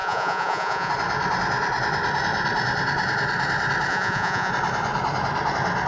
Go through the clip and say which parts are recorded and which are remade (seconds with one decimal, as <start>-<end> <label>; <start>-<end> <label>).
0.0-0.9 remade; 0.9-3.9 recorded; 3.9-4.5 remade; 4.5-5.9 recorded